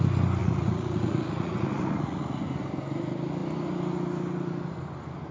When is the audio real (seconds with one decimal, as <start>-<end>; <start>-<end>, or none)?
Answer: 0.0-0.4; 2.4-5.3